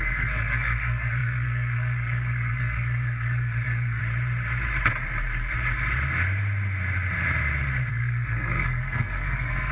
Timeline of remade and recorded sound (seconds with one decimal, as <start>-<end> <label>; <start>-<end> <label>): 0.0-4.0 remade; 4.0-7.9 recorded; 7.9-9.7 remade